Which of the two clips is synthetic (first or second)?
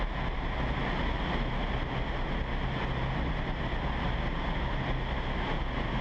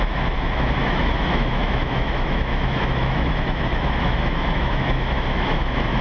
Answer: second